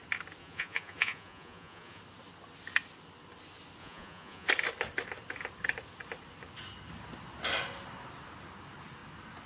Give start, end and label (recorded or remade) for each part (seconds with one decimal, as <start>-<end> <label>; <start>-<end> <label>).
0.0-0.4 recorded; 0.4-2.0 remade; 2.0-3.8 recorded; 3.8-4.5 remade; 4.5-9.5 recorded